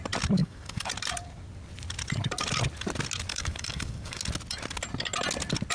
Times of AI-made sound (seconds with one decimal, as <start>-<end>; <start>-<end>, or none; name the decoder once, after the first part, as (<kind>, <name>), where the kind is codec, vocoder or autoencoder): 0.4-0.9 (codec, DAC); 3.3-4.2